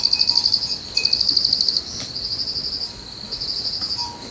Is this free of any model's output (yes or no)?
yes